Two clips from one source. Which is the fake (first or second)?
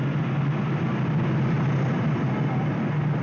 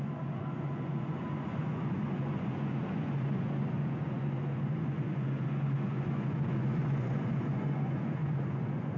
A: second